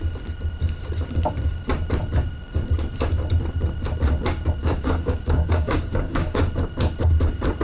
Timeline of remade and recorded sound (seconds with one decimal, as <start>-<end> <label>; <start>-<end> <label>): 0.0-4.6 recorded; 4.6-6.4 remade; 6.4-7.6 recorded